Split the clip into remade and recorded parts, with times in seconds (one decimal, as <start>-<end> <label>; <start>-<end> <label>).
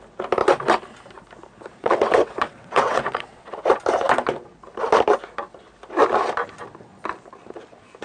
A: 0.0-1.8 recorded; 1.8-3.8 remade; 3.8-8.0 recorded